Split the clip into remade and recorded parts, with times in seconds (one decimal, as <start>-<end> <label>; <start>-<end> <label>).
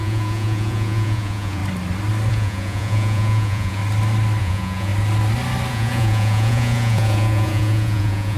0.0-1.6 remade; 1.6-2.3 recorded; 2.3-3.8 remade; 3.8-4.4 recorded; 4.4-4.9 remade; 4.9-5.7 recorded; 5.7-8.4 remade